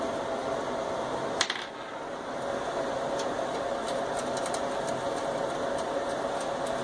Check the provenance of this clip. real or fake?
real